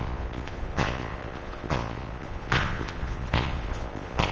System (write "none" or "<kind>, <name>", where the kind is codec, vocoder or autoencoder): vocoder, Vocos